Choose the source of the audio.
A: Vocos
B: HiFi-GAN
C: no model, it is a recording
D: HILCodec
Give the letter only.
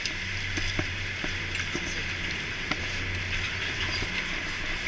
C